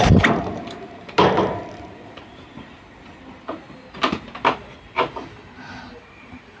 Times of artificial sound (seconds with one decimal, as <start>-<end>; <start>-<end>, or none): none